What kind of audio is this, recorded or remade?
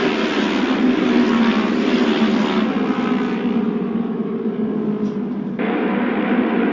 recorded